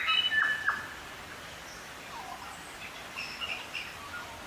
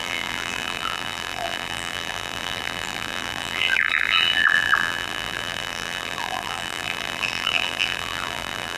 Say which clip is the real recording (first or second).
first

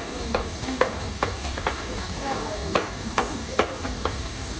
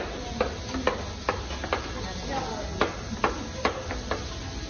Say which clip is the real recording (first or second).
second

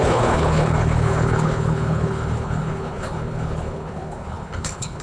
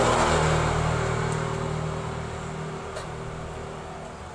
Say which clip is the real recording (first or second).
second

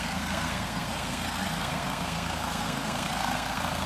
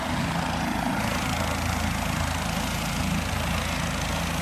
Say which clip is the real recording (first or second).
second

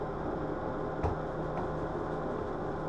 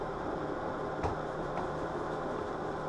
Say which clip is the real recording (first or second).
first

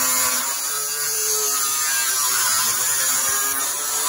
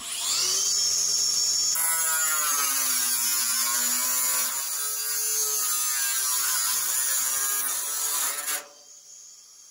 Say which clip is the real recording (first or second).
second